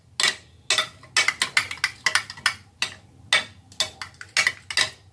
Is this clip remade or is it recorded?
recorded